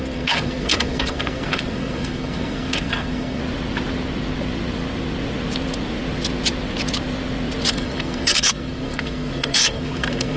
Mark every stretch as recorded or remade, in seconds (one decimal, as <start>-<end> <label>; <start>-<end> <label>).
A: 0.0-3.4 remade; 3.4-7.7 recorded; 7.7-10.4 remade